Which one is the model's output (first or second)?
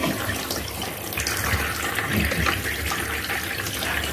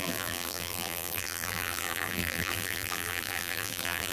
second